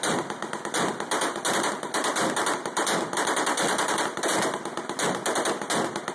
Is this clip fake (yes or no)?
no